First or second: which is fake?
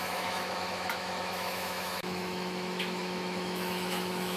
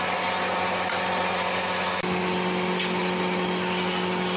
first